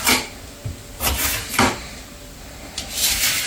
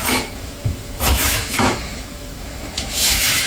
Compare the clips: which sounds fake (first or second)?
second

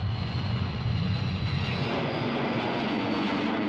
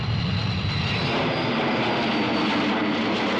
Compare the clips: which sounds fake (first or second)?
first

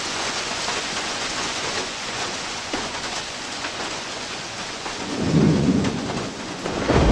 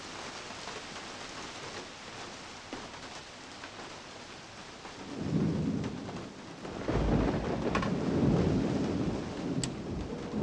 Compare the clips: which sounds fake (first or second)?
first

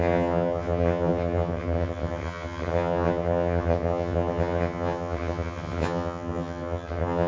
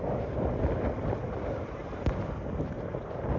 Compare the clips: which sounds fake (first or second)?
first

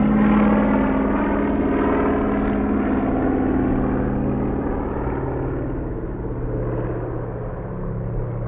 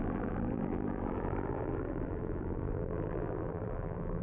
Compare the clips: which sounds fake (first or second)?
second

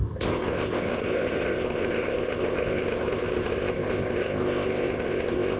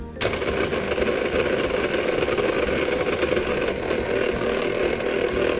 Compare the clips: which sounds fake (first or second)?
first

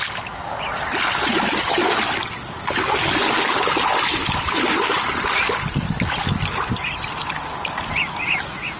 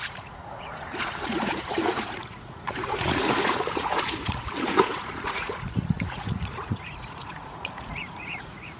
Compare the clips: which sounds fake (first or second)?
second